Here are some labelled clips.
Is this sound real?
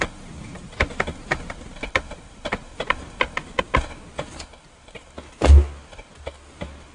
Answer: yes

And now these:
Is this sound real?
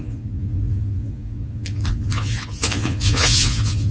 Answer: no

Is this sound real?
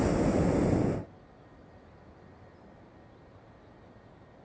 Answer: yes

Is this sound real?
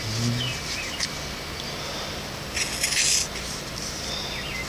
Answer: yes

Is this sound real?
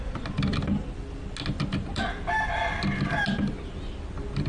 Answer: yes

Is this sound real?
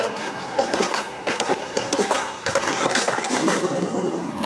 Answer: no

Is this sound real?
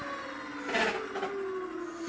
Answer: yes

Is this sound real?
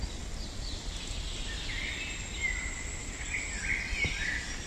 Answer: yes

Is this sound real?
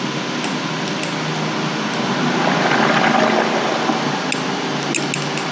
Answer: yes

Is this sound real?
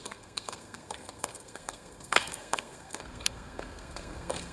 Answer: no